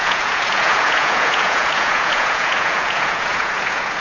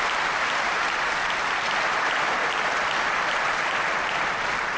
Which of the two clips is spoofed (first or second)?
first